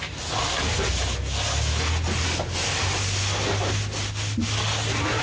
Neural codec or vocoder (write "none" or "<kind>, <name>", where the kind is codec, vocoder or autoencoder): none